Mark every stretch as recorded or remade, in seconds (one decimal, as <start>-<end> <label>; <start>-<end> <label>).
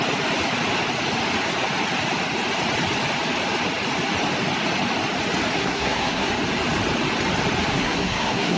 0.0-5.6 recorded; 5.6-6.3 remade; 6.3-7.7 recorded; 7.7-8.6 remade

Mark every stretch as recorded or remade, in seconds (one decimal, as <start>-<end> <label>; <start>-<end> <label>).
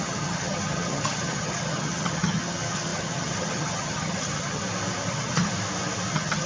0.0-4.6 remade; 4.6-5.1 recorded; 5.1-5.5 remade; 5.5-6.1 recorded; 6.1-6.5 remade